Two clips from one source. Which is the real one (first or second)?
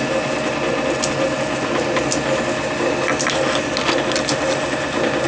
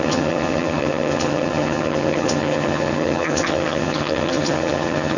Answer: first